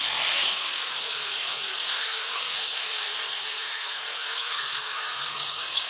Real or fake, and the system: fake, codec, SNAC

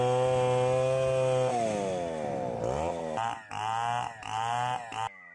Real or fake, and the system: real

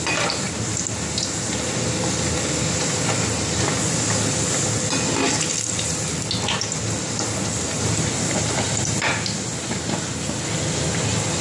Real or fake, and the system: real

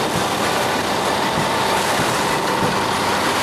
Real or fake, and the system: real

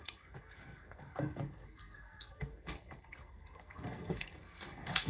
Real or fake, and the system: fake, codec, SNAC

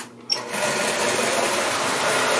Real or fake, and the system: real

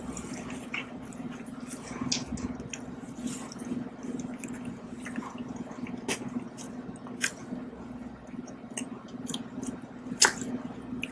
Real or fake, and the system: real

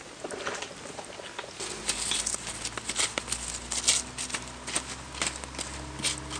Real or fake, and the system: real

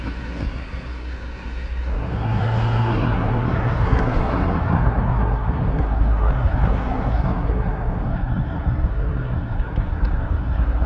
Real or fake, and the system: fake, codec, SNAC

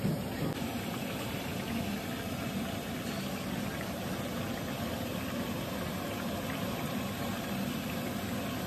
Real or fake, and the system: real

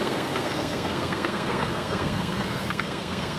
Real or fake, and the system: fake, codec, SNAC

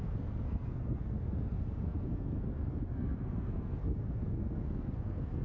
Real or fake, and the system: fake, codec, SNAC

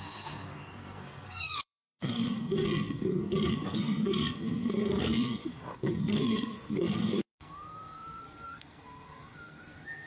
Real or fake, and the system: fake, codec, SNAC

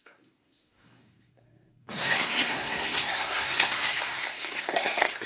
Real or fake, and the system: fake, codec, SNAC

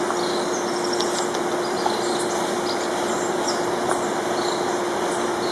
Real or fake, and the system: real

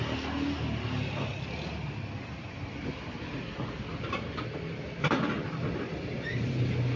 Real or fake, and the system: real